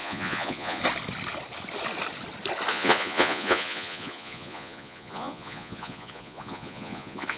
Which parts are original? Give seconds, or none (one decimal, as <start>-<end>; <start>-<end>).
0.8-2.7